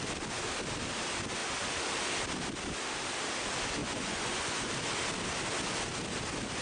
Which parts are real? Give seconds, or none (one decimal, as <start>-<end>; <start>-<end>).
0.0-3.8; 4.7-6.6